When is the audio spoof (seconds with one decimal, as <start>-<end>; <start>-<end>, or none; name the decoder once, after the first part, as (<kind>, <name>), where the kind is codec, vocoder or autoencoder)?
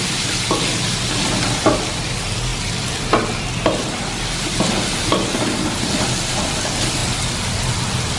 none